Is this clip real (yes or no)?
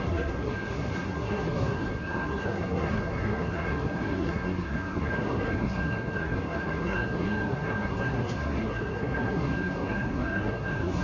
no